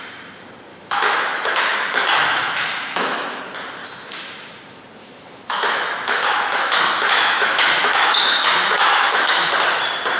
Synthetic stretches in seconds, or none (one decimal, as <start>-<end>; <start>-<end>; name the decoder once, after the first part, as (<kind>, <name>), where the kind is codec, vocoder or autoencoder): 0.7-3.4 (autoencoder, DAC-VAE); 3.8-4.6; 5.0-9.5